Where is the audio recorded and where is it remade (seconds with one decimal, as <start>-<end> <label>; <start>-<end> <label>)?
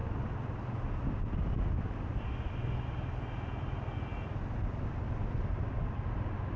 0.0-6.6 recorded